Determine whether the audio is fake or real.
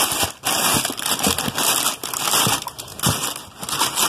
real